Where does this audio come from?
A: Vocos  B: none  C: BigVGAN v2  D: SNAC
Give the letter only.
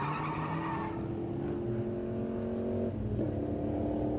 B